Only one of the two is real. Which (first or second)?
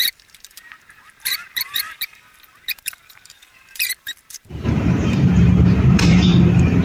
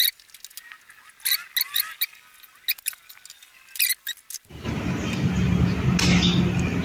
second